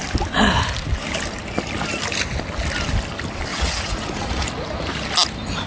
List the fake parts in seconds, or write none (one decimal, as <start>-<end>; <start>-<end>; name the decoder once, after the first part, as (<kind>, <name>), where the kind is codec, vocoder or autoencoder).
3.5-4.5 (vocoder, Vocos)